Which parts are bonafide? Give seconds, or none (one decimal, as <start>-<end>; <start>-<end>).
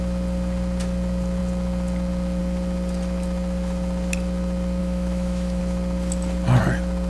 0.0-4.8; 5.6-7.1